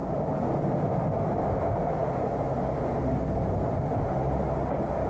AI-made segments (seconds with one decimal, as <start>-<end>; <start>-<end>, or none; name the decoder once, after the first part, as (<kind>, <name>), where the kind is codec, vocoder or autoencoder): none